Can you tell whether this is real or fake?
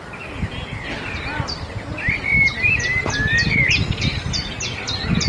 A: real